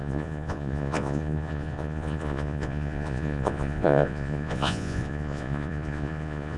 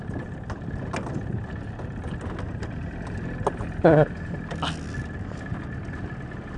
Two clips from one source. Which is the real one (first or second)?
second